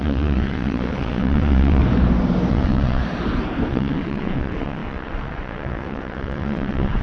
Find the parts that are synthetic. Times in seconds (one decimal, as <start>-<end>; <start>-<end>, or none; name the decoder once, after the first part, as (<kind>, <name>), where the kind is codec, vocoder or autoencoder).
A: 0.0-1.8 (vocoder, WaveNeXt); 2.5-3.0; 3.7-7.0